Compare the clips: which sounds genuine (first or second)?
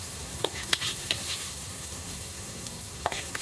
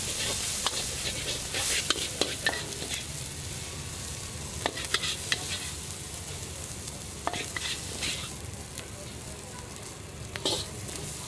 second